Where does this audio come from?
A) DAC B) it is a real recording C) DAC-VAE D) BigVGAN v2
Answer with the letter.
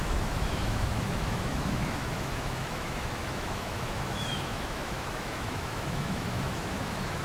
C